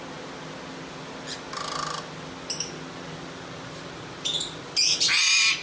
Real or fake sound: real